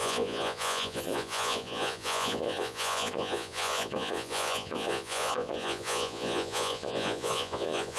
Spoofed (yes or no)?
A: yes